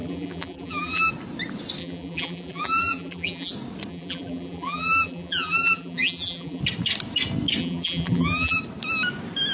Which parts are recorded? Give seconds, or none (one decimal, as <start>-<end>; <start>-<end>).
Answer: 1.1-1.8; 3.5-3.9; 6.6-7.6; 8.6-9.5